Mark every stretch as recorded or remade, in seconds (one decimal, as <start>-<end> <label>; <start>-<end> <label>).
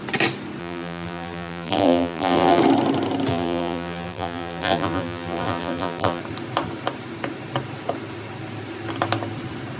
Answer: 0.0-0.6 recorded; 0.6-2.6 remade; 2.6-3.3 recorded; 3.3-6.2 remade; 6.2-9.8 recorded